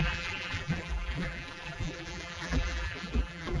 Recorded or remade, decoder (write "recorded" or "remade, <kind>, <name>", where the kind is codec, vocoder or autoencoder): remade, vocoder, BigVGAN v2